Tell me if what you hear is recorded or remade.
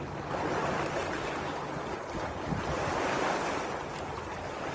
recorded